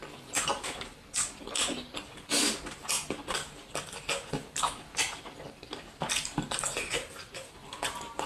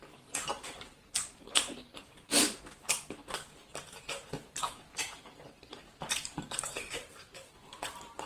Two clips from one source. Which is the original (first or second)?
first